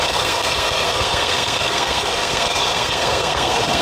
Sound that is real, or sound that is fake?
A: fake